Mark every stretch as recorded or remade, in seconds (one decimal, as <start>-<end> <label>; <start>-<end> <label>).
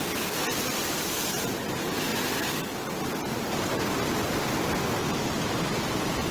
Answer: 0.0-6.3 recorded